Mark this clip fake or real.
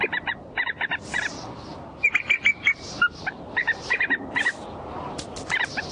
real